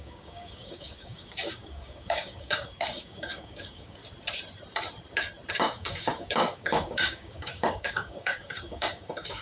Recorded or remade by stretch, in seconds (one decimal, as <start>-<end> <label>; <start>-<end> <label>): 0.0-4.0 remade; 4.0-5.5 recorded; 5.5-9.4 remade